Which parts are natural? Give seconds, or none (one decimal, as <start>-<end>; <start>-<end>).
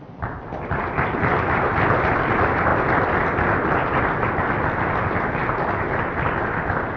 0.0-7.0